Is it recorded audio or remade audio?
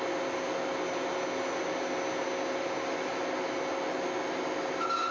recorded